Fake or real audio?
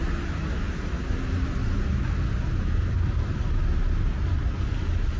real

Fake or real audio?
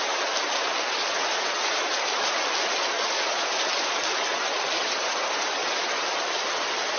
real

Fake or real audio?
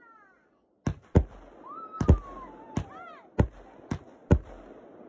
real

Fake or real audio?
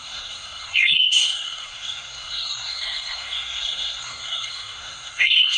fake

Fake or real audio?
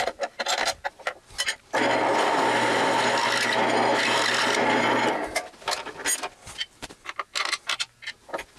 real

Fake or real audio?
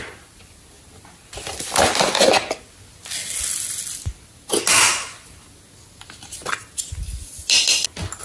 real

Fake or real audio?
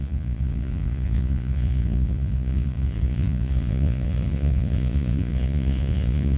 fake